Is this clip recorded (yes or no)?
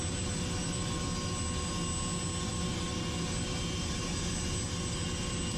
yes